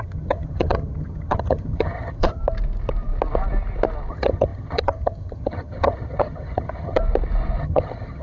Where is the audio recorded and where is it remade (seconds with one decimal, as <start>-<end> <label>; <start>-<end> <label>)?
0.0-2.4 remade; 2.4-4.1 recorded; 4.1-7.0 remade; 7.0-7.6 recorded; 7.6-8.2 remade